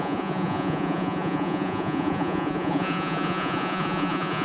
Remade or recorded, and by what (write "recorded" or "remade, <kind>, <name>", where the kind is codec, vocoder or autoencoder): remade, vocoder, Vocos